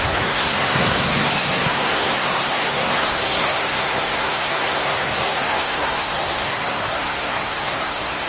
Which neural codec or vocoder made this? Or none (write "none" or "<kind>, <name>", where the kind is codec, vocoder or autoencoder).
codec, SNAC